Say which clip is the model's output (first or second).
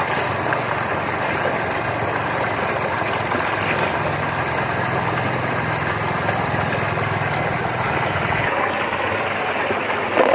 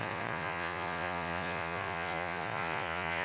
second